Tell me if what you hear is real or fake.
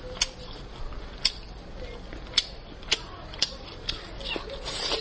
real